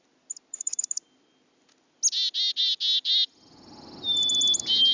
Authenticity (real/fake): real